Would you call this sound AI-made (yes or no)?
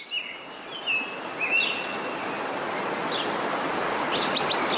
no